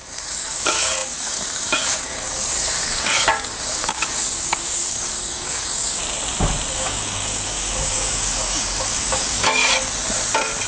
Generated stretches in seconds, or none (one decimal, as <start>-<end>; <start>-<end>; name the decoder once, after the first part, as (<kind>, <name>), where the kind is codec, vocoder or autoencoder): 0.0-6.0 (codec, DAC); 6.7-9.6